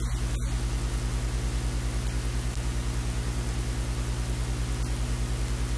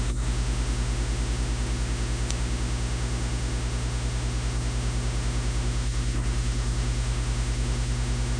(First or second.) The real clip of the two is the first